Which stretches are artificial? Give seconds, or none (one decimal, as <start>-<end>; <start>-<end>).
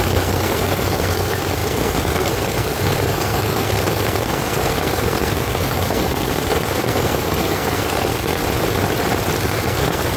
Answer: 0.0-8.4; 9.4-10.2